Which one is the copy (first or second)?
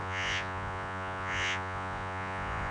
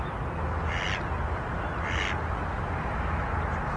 first